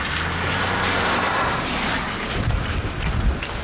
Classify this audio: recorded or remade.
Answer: recorded